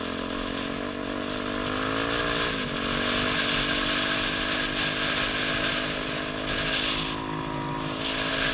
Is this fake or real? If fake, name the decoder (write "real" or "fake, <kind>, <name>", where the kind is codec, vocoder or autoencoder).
real